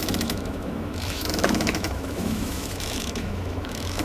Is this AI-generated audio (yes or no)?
yes